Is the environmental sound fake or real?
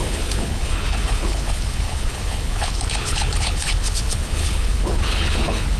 fake